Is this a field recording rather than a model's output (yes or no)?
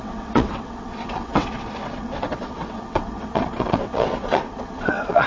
no